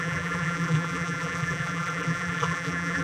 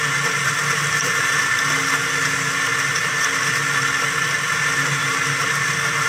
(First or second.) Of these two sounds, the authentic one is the second